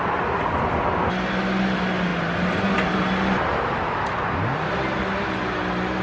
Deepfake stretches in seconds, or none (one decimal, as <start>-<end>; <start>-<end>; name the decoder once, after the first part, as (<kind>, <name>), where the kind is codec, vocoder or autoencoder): none

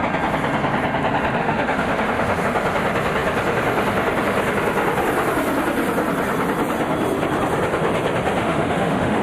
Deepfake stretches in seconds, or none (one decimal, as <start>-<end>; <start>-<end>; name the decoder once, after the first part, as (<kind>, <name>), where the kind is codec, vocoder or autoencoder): 1.4-2.4 (autoencoder, DAC-VAE); 8.4-9.2